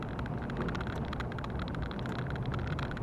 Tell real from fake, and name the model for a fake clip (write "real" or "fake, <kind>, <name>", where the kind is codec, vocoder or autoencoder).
real